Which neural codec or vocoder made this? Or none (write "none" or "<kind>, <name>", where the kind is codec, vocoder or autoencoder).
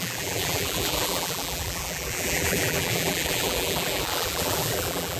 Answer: vocoder, BigVGAN v2